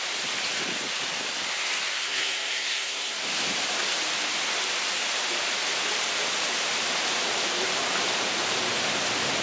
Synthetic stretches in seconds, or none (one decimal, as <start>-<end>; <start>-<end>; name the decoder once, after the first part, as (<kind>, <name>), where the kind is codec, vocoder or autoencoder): 2.0-3.2 (codec, SNAC)